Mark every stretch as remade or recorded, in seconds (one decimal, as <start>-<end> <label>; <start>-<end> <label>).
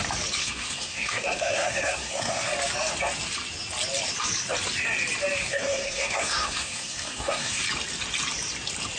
0.0-0.4 recorded; 0.4-2.5 remade; 2.5-5.4 recorded; 5.4-7.6 remade; 7.6-9.0 recorded